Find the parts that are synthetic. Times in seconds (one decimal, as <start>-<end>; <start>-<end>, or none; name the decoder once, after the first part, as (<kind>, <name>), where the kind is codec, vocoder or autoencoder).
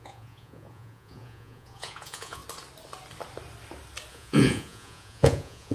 0.0-2.4 (vocoder, Vocos); 4.1-5.7